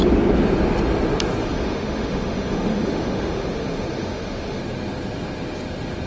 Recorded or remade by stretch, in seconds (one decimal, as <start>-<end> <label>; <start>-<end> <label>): 0.0-1.4 recorded; 1.4-4.6 remade; 4.6-6.1 recorded

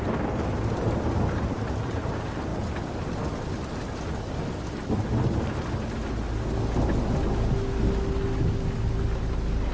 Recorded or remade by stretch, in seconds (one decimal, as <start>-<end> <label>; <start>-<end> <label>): 0.0-9.7 recorded